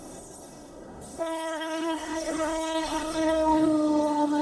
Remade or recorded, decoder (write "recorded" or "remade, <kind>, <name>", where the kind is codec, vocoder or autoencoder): remade, codec, SNAC